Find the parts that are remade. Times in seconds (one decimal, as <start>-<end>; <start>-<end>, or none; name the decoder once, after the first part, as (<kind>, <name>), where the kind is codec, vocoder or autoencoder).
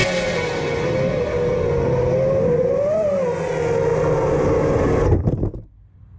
none